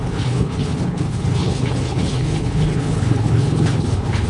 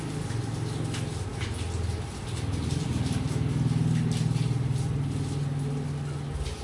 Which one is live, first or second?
second